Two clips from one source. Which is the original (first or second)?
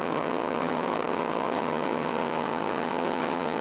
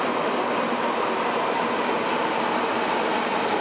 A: second